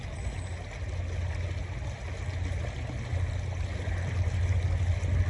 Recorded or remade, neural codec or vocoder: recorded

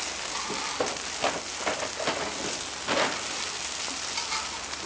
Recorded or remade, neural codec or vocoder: recorded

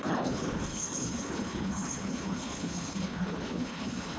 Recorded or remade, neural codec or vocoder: remade, codec, HILCodec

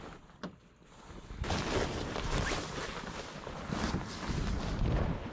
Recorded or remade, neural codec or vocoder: recorded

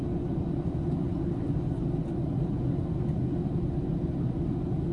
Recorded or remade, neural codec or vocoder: recorded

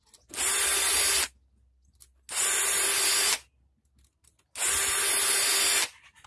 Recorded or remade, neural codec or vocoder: recorded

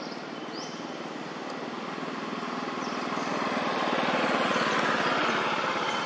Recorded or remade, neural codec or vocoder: recorded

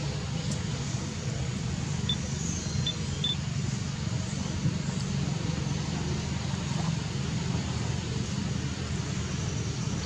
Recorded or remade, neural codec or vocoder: recorded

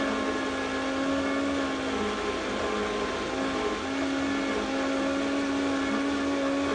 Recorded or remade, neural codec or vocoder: recorded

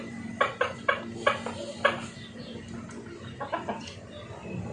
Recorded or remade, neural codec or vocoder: recorded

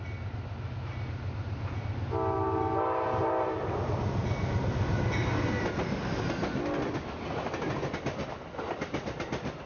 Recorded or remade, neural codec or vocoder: recorded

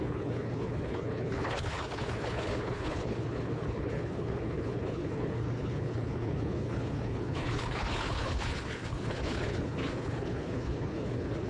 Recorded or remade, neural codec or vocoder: remade, codec, HILCodec